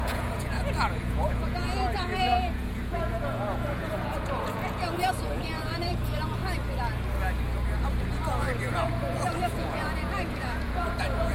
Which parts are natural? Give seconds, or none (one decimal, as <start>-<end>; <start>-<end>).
6.4-8.0